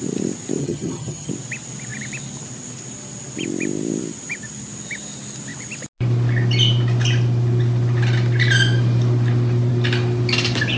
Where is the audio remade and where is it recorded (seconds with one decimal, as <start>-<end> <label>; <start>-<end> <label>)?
0.0-0.6 recorded; 0.6-1.3 remade; 1.3-10.8 recorded

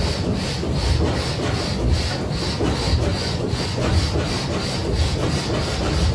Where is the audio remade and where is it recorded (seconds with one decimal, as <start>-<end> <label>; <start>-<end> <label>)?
0.0-3.1 recorded; 3.1-4.0 remade; 4.0-6.1 recorded